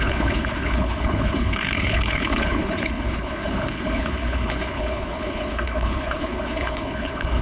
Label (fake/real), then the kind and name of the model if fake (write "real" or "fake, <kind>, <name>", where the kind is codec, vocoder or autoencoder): fake, codec, HILCodec